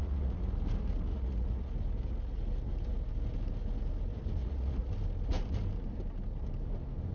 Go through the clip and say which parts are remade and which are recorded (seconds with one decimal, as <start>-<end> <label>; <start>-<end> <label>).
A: 0.0-0.5 remade; 0.5-1.1 recorded; 1.1-1.7 remade; 1.7-4.4 recorded; 4.4-4.9 remade; 4.9-7.1 recorded